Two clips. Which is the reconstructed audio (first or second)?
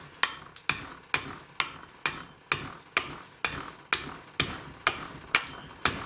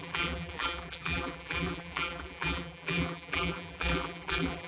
second